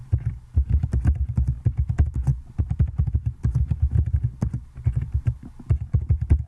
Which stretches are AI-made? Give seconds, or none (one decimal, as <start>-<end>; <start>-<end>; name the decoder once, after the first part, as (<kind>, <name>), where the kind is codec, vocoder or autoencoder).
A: none